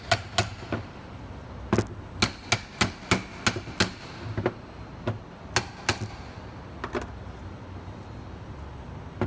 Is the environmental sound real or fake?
real